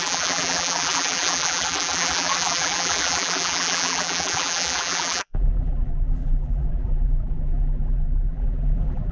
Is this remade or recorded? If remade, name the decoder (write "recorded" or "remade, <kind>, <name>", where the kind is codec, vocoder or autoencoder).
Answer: remade, vocoder, BigVGAN v2